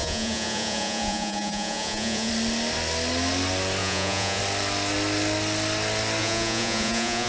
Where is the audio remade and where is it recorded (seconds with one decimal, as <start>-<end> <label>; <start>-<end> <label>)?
0.0-2.3 remade; 2.3-3.8 recorded; 3.8-4.4 remade; 4.4-6.2 recorded; 6.2-7.3 remade